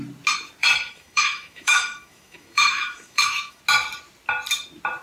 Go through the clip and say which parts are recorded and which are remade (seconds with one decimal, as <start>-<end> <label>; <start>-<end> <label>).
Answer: 0.0-0.6 recorded; 0.6-3.6 remade; 3.6-5.0 recorded